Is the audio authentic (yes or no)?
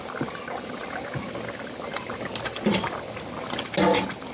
yes